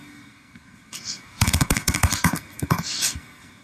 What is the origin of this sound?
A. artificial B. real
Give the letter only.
A